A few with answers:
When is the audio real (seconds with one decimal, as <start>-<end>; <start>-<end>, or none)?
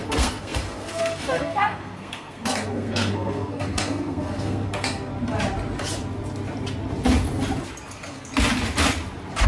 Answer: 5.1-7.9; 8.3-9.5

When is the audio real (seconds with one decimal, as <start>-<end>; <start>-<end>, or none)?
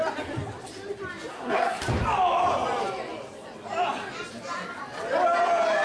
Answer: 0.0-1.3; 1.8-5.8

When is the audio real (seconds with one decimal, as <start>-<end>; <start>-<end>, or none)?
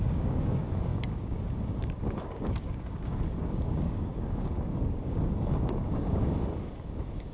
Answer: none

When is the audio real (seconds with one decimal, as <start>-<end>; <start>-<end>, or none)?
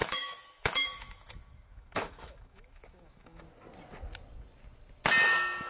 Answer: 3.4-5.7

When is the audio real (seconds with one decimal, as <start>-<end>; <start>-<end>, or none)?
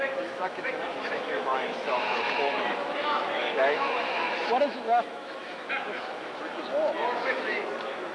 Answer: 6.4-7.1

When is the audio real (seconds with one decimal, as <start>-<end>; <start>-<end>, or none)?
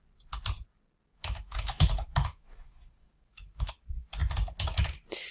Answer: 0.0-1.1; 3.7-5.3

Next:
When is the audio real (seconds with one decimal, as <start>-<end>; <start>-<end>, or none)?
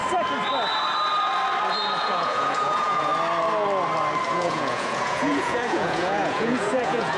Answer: 0.0-2.0; 3.1-4.3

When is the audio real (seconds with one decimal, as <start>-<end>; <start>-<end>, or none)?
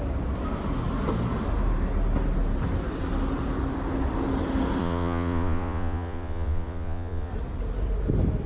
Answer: 0.0-4.8; 7.3-8.5